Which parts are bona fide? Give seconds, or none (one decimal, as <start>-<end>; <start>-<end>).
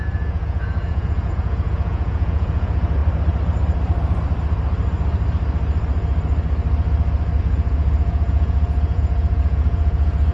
3.0-7.4